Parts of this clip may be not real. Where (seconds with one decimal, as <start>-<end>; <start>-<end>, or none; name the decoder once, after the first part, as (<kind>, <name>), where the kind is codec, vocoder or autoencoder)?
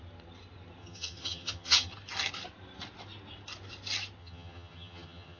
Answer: 0.8-1.9 (vocoder, HiFi-GAN); 4.2-5.4